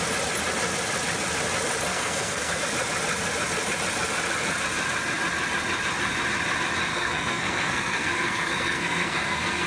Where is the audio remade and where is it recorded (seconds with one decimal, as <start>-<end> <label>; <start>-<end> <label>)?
0.0-1.9 recorded; 1.9-2.6 remade; 2.6-6.9 recorded; 6.9-9.7 remade